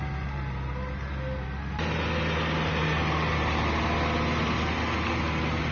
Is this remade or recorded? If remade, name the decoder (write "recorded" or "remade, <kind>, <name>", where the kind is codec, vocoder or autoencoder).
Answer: recorded